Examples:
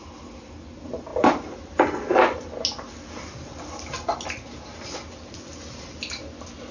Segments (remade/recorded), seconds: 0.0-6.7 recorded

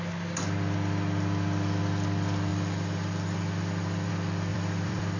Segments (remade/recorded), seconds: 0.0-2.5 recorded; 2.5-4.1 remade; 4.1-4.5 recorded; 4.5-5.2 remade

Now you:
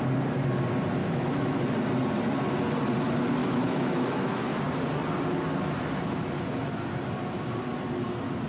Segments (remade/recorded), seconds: 0.0-1.0 recorded; 1.0-1.6 remade; 1.6-3.4 recorded; 3.4-4.4 remade; 4.4-8.5 recorded